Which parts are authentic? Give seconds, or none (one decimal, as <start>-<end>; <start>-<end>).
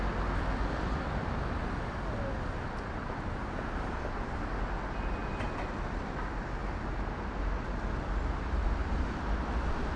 0.0-10.0